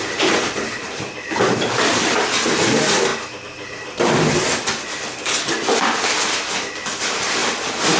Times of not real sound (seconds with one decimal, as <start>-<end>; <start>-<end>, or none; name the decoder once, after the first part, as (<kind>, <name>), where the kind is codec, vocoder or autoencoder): 0.0-3.1 (vocoder, BigVGAN v2); 6.3-7.4